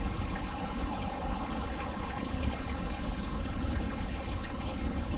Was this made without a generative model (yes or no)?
no